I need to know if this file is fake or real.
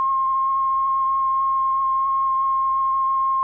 fake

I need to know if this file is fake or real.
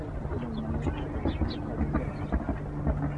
real